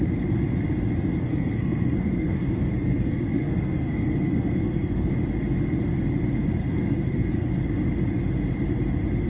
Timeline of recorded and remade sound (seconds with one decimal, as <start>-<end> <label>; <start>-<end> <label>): 0.0-1.3 recorded; 1.3-5.1 remade; 5.1-6.6 recorded; 6.6-7.5 remade; 7.5-9.3 recorded